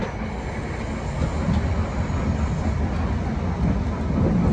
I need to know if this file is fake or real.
real